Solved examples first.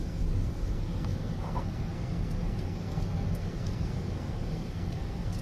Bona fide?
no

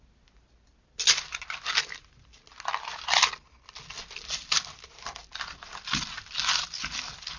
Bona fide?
yes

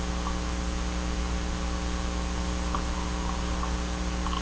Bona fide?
yes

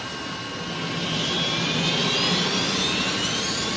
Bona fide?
yes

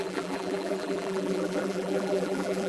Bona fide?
no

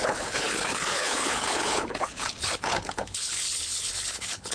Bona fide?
no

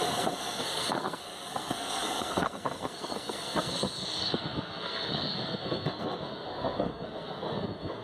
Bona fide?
no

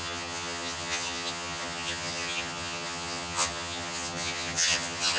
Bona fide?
no